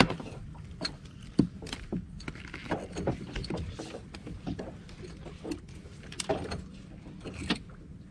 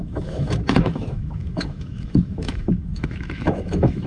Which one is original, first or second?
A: first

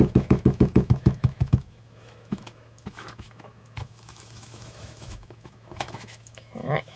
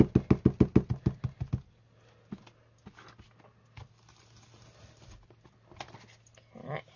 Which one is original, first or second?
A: second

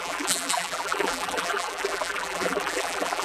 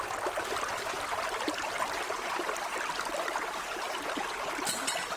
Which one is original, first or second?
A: second